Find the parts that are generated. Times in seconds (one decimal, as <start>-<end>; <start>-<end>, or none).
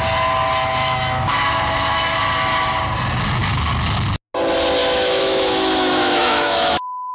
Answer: 0.8-2.2; 4.8-7.1